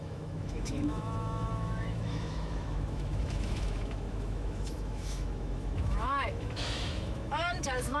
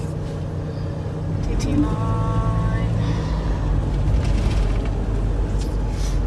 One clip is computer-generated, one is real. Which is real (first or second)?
second